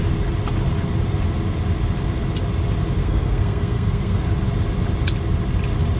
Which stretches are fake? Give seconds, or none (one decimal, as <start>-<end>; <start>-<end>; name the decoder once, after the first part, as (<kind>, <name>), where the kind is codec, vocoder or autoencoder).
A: 3.0-4.3 (codec, SNAC)